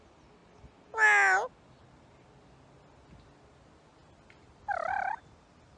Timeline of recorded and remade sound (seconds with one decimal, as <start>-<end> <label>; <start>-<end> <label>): 0.0-5.8 recorded